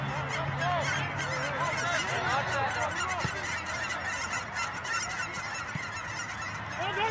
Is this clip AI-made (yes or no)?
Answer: no